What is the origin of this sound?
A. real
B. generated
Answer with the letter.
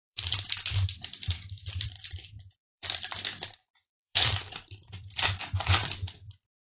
B